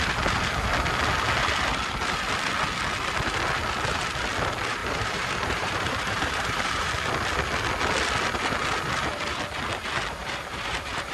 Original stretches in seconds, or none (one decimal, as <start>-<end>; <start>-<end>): 0.0-4.8; 6.9-10.2